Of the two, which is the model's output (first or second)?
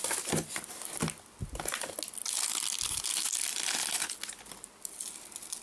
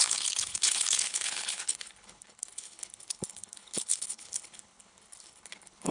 second